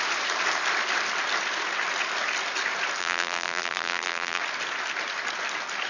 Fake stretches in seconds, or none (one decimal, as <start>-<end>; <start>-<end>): 3.0-4.4